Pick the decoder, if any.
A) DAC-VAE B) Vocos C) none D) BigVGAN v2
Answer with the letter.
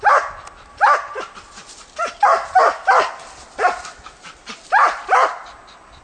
C